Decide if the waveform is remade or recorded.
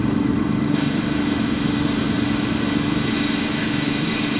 remade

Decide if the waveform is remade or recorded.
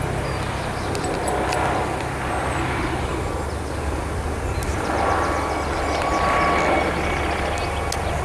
recorded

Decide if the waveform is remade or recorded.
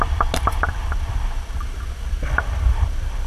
recorded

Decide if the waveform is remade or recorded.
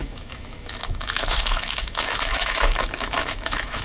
remade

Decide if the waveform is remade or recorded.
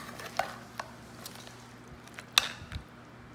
recorded